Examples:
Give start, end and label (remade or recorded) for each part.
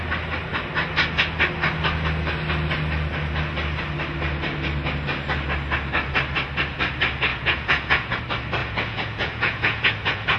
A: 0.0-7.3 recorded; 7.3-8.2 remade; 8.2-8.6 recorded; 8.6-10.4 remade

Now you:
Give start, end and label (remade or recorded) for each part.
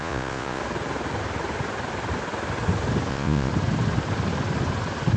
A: 0.0-0.6 remade; 0.6-3.1 recorded; 3.1-3.5 remade; 3.5-5.2 recorded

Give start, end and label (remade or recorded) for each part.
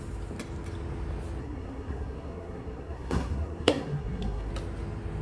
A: 0.0-1.4 recorded; 1.4-4.5 remade; 4.5-5.2 recorded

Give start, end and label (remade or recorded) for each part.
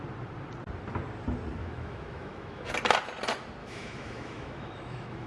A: 0.0-1.6 recorded; 1.6-2.7 remade; 2.7-3.6 recorded; 3.6-5.3 remade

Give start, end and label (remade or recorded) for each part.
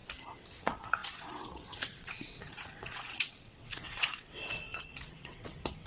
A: 0.0-0.6 recorded; 0.6-5.9 remade